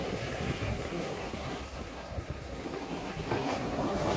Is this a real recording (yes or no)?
no